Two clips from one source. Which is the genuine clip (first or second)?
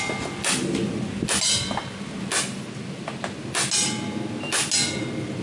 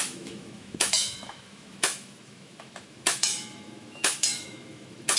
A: first